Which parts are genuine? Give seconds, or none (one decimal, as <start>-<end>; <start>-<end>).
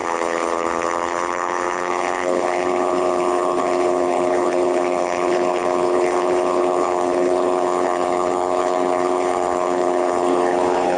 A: none